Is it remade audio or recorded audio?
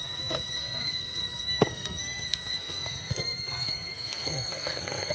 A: remade